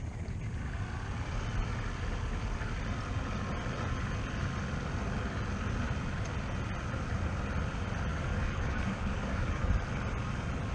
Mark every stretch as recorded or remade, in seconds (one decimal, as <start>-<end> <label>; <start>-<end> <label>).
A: 0.0-8.1 recorded; 8.1-9.7 remade; 9.7-10.7 recorded